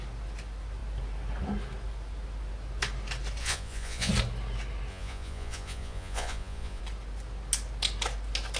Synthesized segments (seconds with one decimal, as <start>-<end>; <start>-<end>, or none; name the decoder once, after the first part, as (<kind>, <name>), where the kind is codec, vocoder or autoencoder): 3.4-4.1 (vocoder, Vocos); 4.9-6.8

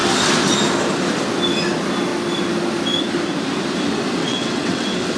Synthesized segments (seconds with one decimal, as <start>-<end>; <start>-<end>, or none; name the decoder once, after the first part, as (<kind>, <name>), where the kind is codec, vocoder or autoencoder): 4.2-5.2 (vocoder, WaveNeXt)

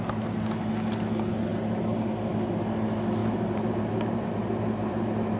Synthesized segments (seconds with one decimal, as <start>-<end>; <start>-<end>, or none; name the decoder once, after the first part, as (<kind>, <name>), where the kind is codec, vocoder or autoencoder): 1.5-2.3 (vocoder, BigVGAN v2); 3.2-4.9

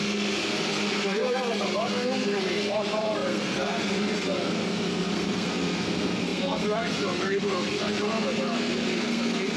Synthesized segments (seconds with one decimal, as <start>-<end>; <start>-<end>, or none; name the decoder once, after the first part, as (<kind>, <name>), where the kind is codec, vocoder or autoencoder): 0.0-9.6 (codec, SNAC)

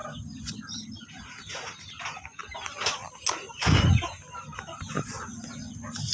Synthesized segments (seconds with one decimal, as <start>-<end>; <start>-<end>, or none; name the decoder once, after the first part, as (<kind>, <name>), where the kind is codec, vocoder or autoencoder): 1.4-2.4 (vocoder, BigVGAN v2)

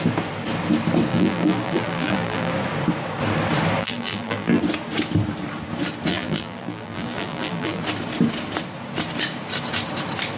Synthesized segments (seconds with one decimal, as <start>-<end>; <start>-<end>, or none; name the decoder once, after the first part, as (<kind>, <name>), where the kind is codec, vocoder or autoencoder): 1.1-2.5 (vocoder, BigVGAN v2); 3.8-4.6; 6.1-7.8